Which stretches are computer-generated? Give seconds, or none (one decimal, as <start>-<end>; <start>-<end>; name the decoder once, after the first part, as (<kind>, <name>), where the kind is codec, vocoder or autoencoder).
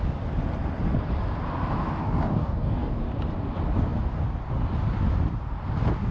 2.0-3.1 (codec, DAC)